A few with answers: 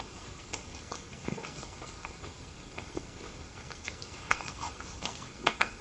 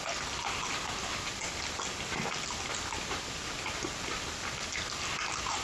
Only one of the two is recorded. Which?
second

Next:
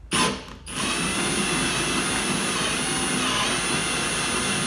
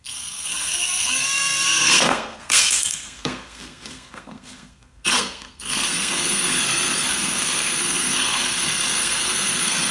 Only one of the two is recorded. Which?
first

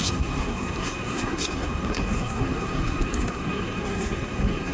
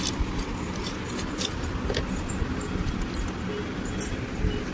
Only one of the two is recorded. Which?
second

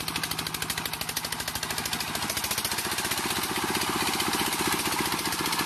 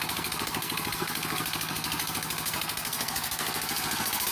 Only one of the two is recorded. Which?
first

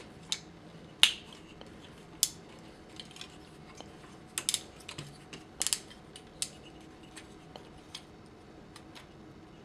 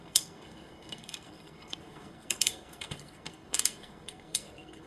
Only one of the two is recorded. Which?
first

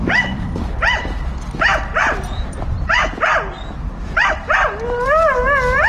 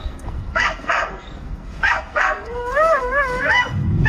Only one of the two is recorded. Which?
first